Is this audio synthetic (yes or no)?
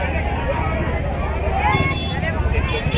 no